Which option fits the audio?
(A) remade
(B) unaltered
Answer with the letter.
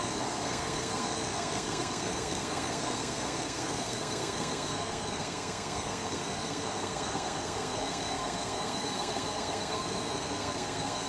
A